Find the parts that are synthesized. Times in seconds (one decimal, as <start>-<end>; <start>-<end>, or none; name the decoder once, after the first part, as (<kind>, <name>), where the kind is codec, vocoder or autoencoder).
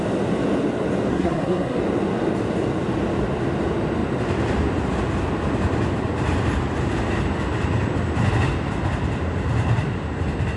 1.1-1.8 (codec, SNAC)